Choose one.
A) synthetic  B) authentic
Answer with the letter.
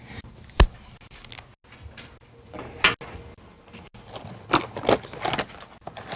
B